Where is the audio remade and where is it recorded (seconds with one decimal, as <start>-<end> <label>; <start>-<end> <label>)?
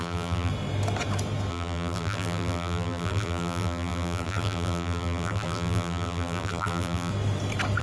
0.0-0.5 remade; 0.5-1.5 recorded; 1.5-7.1 remade; 7.1-7.8 recorded